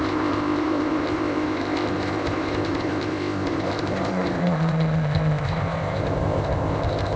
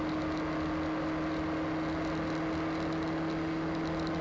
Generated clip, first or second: first